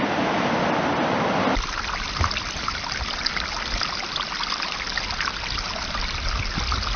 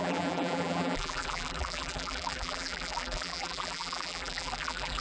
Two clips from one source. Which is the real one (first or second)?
first